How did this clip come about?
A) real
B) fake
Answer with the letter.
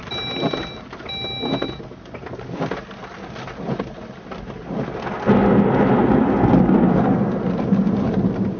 A